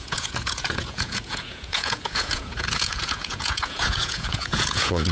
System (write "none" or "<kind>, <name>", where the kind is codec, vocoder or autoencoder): vocoder, Vocos